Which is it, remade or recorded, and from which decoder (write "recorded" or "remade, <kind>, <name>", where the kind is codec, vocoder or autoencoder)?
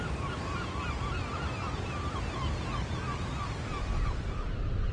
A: recorded